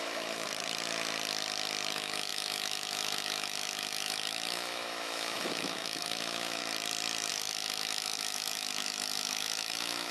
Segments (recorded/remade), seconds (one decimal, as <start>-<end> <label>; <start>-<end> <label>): 0.0-0.5 remade; 0.5-1.9 recorded; 1.9-6.6 remade; 6.6-7.3 recorded; 7.3-10.1 remade